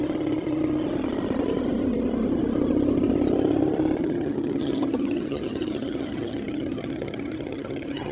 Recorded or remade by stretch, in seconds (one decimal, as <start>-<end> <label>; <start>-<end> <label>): 0.0-4.0 recorded; 4.0-8.1 remade